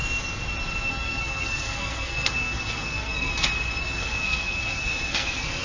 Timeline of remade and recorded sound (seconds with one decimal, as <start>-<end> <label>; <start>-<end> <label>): 0.0-0.9 recorded; 0.9-3.3 remade; 3.3-3.8 recorded; 3.8-5.6 remade